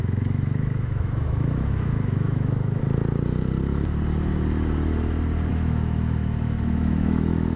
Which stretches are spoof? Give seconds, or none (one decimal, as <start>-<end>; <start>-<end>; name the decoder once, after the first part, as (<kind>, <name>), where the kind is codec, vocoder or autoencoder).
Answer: 0.0-2.8 (autoencoder, DAC-VAE); 5.5-7.6